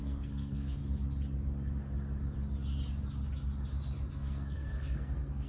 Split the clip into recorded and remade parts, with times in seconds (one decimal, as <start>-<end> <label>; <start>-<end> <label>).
0.0-0.8 remade; 0.8-4.1 recorded; 4.1-5.5 remade